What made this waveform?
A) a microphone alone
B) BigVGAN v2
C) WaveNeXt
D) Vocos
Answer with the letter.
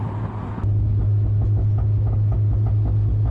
A